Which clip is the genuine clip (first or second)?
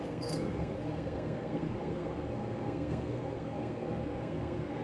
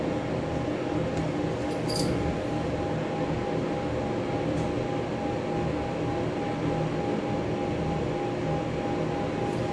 second